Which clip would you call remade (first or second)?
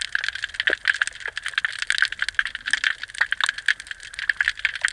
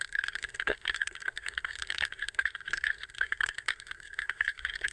second